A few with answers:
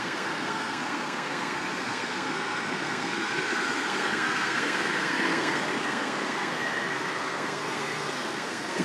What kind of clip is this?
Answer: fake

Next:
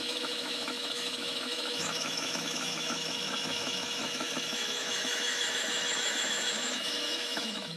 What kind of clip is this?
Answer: fake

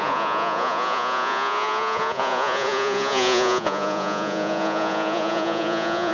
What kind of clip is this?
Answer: fake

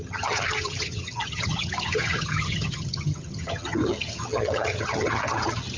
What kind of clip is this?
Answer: fake